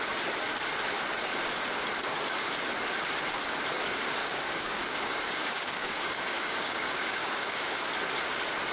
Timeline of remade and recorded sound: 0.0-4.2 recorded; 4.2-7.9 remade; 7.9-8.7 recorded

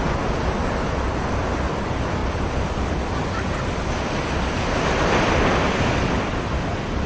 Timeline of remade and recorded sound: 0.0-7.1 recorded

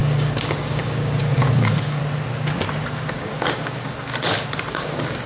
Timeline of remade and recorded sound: 0.0-2.0 remade; 2.0-2.9 recorded; 2.9-4.1 remade; 4.1-4.7 recorded; 4.7-5.3 remade